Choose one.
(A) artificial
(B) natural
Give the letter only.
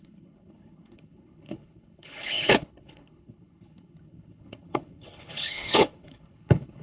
A